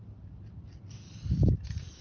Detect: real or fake real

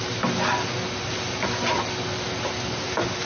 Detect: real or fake real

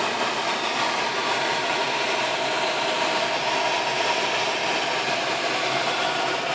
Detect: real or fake real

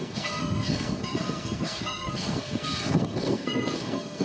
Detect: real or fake fake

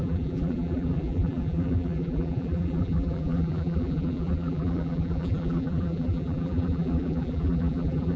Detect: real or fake fake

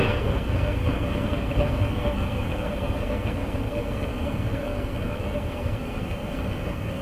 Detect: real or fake fake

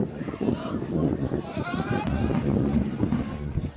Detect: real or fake fake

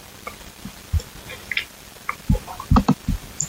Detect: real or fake fake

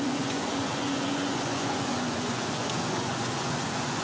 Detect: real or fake fake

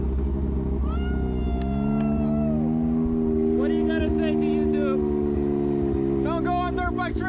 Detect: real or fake real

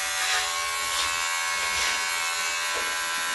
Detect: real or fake real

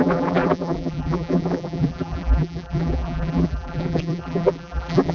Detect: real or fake fake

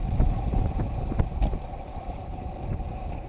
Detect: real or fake fake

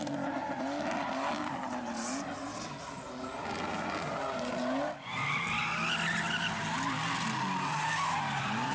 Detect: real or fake real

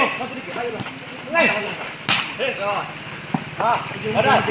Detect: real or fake real